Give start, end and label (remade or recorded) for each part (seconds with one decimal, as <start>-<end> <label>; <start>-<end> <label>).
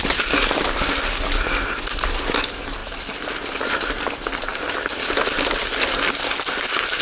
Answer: 0.0-4.5 recorded; 4.5-5.1 remade; 5.1-7.0 recorded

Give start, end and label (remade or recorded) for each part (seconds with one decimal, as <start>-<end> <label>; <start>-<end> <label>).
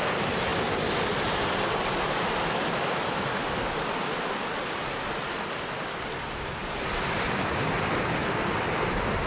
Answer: 0.0-6.6 recorded; 6.6-7.7 remade; 7.7-9.3 recorded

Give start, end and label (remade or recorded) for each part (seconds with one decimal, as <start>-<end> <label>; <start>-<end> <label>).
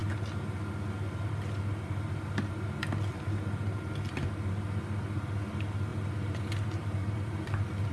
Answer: 0.0-5.9 recorded; 5.9-7.9 remade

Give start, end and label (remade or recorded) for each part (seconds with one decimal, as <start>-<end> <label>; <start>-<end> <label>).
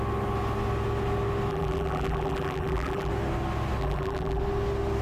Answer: 0.0-1.5 recorded; 1.5-3.1 remade; 3.1-3.8 recorded; 3.8-4.4 remade; 4.4-5.0 recorded